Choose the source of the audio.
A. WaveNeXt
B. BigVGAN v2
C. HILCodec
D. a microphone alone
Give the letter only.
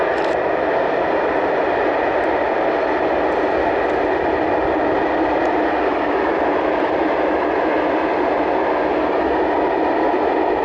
D